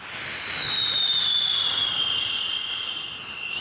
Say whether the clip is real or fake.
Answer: real